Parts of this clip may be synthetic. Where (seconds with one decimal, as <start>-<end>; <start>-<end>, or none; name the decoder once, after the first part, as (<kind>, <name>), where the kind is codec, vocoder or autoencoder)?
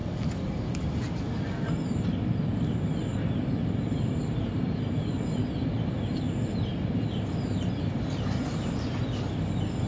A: none